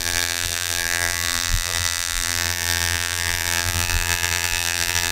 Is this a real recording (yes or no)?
no